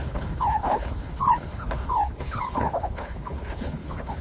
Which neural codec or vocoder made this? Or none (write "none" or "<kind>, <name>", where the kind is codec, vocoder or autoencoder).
codec, HILCodec